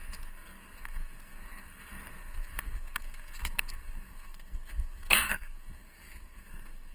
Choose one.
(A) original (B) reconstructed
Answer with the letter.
B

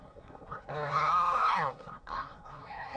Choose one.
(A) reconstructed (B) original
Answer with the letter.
A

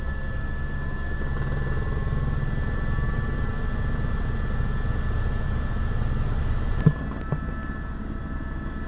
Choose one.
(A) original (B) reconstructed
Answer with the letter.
A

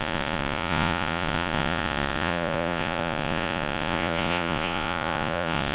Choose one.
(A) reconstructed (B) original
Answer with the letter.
A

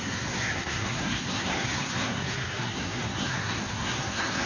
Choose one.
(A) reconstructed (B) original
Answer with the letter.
A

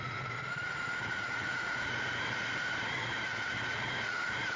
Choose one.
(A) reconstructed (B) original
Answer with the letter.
A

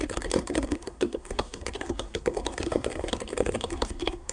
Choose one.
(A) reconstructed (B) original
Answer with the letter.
A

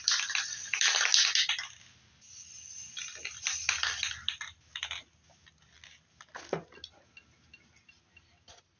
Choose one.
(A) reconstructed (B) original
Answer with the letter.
B